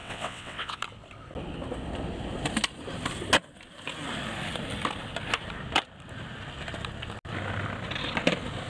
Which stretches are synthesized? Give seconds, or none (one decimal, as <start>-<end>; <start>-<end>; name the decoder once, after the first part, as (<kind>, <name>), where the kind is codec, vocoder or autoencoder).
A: 0.0-0.8 (vocoder, WaveNeXt)